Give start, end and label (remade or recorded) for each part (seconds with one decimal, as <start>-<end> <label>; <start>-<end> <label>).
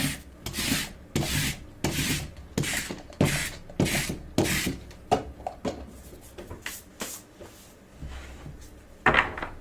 0.0-9.6 recorded